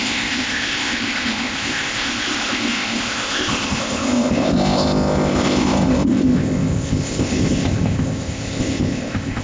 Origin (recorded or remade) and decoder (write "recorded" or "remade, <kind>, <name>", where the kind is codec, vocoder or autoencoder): remade, codec, ZipCodec